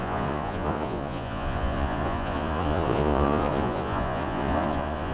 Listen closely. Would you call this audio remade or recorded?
remade